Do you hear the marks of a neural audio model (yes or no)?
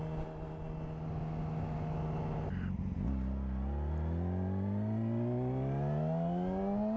no